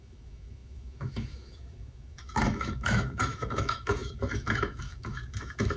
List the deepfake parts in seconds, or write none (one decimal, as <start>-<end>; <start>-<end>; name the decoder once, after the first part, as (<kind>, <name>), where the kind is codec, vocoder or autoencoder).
0.0-5.8 (autoencoder, DAC-VAE)